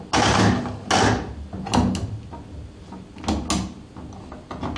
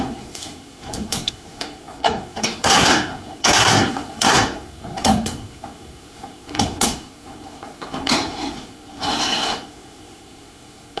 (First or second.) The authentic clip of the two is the first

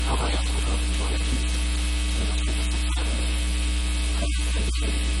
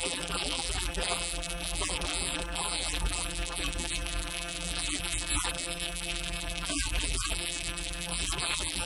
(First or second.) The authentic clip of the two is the first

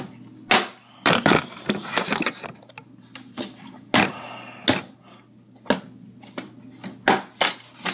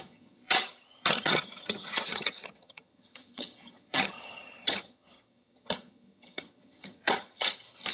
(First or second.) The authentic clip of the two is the first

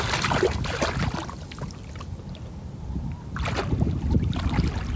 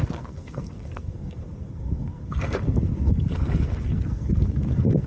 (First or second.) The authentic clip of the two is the first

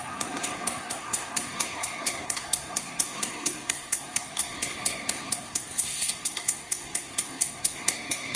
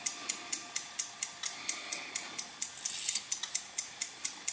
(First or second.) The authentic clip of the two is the second